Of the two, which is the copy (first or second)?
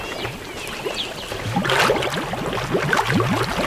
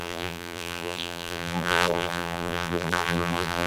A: second